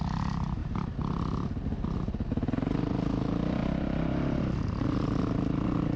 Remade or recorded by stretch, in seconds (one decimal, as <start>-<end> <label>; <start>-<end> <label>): 0.0-6.0 recorded